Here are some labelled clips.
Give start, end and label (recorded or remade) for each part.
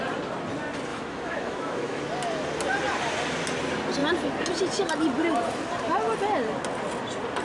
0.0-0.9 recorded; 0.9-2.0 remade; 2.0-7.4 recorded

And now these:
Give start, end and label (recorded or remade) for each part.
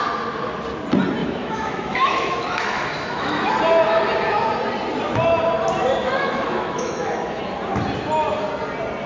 0.0-1.2 recorded; 1.2-3.5 remade; 3.5-6.0 recorded; 6.0-7.4 remade; 7.4-9.1 recorded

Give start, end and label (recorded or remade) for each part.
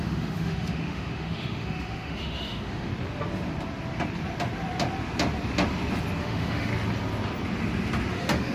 0.0-2.9 remade; 2.9-6.2 recorded; 6.2-6.7 remade; 6.7-8.1 recorded; 8.1-8.5 remade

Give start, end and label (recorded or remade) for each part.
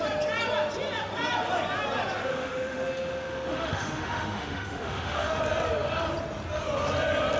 0.0-2.3 recorded; 2.3-5.4 remade; 5.4-7.4 recorded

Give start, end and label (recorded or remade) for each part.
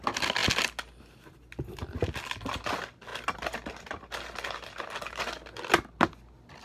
0.0-6.6 recorded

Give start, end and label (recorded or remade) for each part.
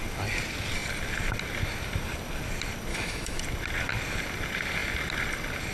0.0-2.9 recorded; 2.9-3.4 remade; 3.4-5.7 recorded